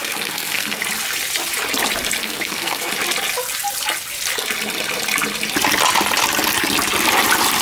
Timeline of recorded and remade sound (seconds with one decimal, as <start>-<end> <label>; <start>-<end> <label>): 0.0-0.8 remade; 0.8-2.2 recorded; 2.2-2.9 remade; 2.9-7.6 recorded